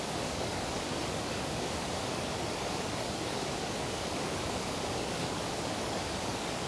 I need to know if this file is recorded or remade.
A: remade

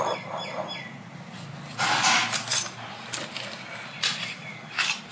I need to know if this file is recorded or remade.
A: recorded